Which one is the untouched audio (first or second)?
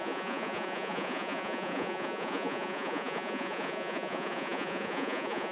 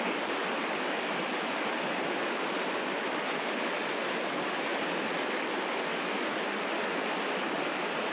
second